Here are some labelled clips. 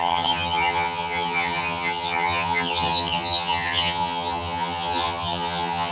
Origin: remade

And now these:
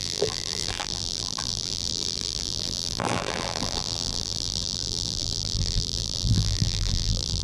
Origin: remade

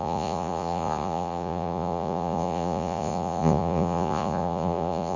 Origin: remade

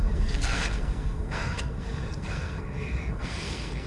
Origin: remade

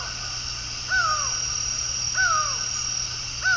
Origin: recorded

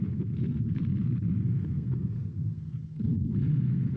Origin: remade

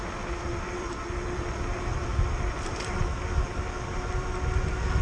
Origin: recorded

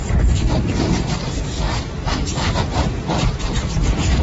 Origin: remade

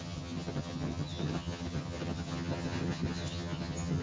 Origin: remade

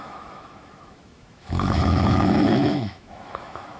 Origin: remade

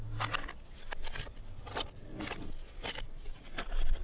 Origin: recorded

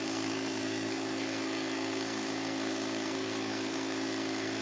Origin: remade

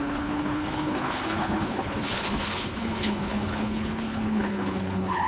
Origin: remade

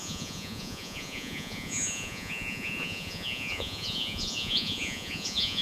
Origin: remade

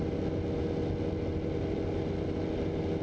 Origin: recorded